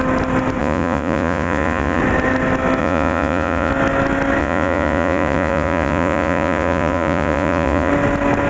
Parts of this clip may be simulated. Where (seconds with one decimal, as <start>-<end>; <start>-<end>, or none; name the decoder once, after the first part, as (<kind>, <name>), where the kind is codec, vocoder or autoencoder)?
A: 0.6-2.0 (vocoder, Vocos); 2.8-3.7; 4.4-7.9